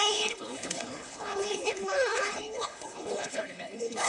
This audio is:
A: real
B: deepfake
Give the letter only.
B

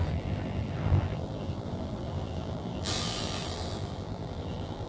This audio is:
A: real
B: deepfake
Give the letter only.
B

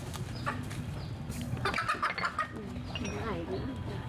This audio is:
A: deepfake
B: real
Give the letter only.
B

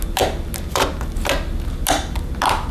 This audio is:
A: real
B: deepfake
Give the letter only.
A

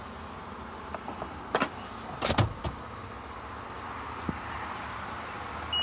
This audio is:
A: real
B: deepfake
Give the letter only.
A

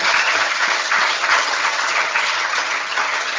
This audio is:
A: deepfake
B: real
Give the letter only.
A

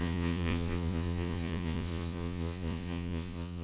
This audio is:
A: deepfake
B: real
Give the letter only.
A